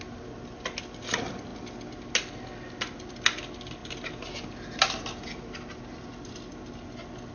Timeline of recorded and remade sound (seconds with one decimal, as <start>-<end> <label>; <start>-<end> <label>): 0.0-7.3 recorded